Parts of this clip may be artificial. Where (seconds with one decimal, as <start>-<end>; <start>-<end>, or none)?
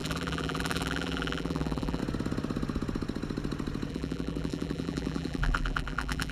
0.0-2.0; 3.9-6.3